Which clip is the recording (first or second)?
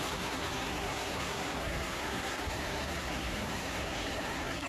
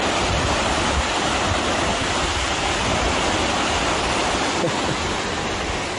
second